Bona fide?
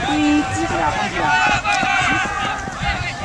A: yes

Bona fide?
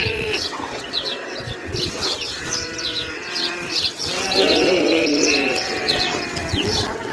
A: no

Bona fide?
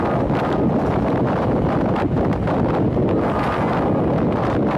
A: yes